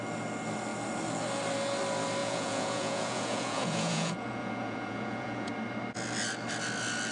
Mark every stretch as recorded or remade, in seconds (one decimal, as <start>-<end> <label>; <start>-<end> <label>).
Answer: 0.0-2.2 recorded; 2.2-5.5 remade; 5.5-7.1 recorded

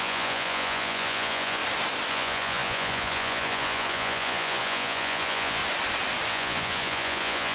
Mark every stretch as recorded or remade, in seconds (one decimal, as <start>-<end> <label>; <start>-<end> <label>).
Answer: 0.0-1.6 remade; 1.6-2.1 recorded; 2.1-5.6 remade; 5.6-6.3 recorded; 6.3-7.5 remade

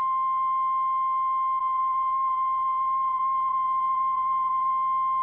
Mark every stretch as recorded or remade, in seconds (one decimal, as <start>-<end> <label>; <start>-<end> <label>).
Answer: 0.0-1.6 recorded; 1.6-4.7 remade; 4.7-5.2 recorded

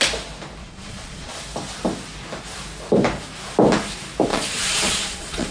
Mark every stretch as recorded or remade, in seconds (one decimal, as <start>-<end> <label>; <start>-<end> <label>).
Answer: 0.0-0.6 recorded; 0.6-1.3 remade; 1.3-4.3 recorded; 4.3-5.5 remade

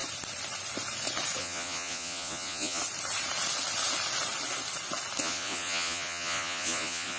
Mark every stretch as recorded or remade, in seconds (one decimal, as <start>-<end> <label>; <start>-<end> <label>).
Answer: 0.0-1.4 recorded; 1.4-2.8 remade; 2.8-5.2 recorded; 5.2-7.2 remade